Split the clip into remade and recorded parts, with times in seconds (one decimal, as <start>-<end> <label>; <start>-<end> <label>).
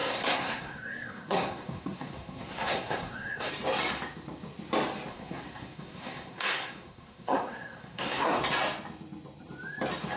0.0-3.5 remade; 3.5-5.1 recorded; 5.1-8.4 remade; 8.4-10.2 recorded